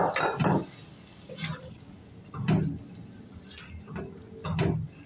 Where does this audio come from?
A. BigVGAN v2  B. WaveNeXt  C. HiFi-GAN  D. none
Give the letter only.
D